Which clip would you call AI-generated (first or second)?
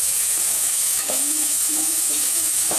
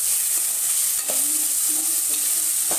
first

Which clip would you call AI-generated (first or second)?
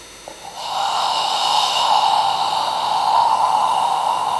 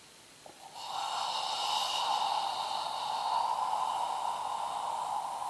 first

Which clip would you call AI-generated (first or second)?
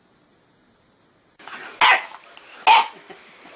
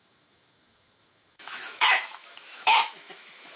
second